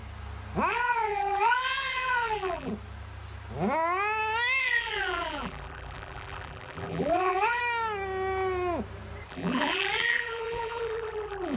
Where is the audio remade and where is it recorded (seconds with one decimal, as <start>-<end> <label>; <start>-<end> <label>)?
0.0-0.7 recorded; 0.7-2.7 remade; 2.7-4.6 recorded; 4.6-7.6 remade; 7.6-9.3 recorded; 9.3-11.6 remade